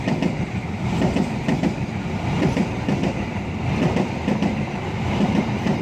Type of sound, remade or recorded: remade